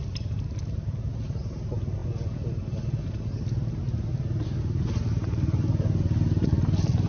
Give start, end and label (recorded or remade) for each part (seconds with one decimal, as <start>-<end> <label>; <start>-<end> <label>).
0.0-7.1 recorded